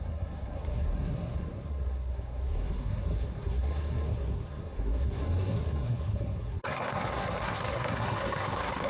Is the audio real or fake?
fake